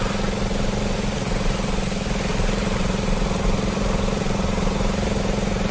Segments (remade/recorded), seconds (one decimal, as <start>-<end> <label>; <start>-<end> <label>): 0.0-2.3 recorded; 2.3-5.7 remade